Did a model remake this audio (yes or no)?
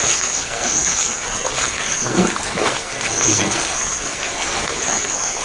yes